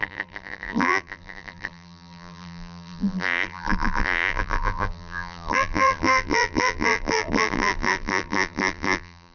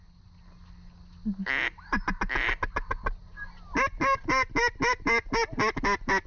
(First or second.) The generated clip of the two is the first